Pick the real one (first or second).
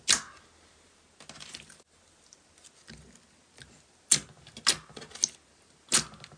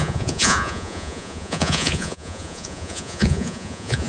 first